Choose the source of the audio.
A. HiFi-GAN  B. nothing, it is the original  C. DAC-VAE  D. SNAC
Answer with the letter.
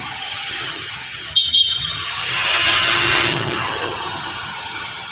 A